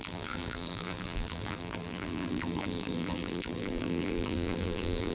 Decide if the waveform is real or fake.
fake